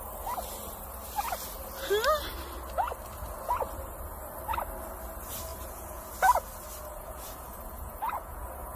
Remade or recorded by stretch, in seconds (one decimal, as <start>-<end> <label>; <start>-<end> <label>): 0.0-5.5 recorded; 5.5-6.1 remade; 6.1-6.9 recorded; 6.9-8.8 remade